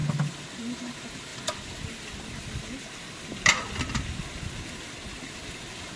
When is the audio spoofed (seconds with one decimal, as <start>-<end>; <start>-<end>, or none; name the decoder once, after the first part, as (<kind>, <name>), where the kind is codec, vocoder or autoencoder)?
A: none